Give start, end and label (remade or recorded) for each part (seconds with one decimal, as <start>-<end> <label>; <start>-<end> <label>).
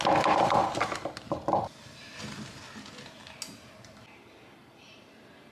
0.0-5.5 recorded